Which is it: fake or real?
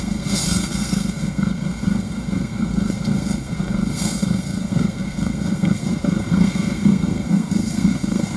fake